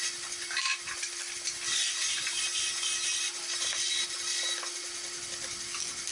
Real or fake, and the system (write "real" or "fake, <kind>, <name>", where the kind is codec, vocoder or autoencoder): real